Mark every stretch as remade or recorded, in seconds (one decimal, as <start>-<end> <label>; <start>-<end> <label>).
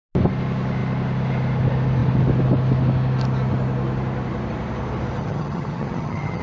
0.0-5.2 recorded; 5.2-6.4 remade